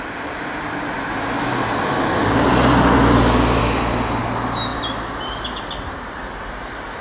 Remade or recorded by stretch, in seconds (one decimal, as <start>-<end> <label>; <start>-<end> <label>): 0.0-3.6 recorded; 3.6-4.2 remade; 4.2-7.0 recorded